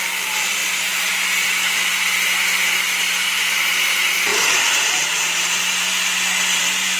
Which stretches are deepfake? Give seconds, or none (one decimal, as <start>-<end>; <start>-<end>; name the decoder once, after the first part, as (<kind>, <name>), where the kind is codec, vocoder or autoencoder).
0.0-0.6 (vocoder, BigVGAN v2); 3.2-5.9; 6.6-7.0

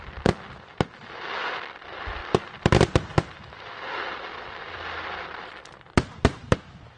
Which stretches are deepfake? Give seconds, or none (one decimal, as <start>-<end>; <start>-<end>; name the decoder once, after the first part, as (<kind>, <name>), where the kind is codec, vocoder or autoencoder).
2.2-6.4 (vocoder, BigVGAN v2)

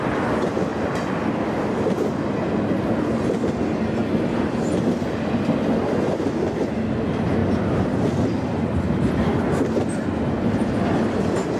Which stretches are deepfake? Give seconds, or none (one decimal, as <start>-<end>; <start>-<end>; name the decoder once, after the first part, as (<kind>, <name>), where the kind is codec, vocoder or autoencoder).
none

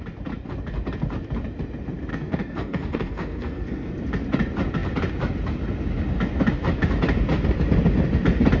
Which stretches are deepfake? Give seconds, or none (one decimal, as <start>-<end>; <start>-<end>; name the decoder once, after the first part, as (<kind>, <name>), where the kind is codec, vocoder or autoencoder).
2.1-3.9 (codec, SNAC)